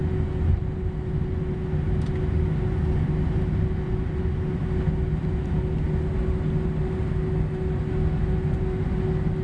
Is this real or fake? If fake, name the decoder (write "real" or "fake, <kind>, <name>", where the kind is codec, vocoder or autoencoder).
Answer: real